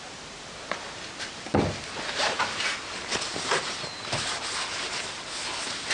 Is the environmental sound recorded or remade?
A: recorded